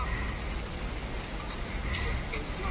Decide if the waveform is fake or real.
real